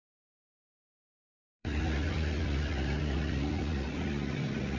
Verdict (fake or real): fake